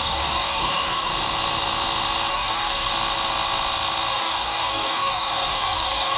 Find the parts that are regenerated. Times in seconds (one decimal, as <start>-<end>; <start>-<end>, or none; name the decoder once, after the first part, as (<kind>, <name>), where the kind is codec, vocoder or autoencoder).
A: 0.0-1.1 (codec, DAC); 2.3-2.9; 4.1-6.2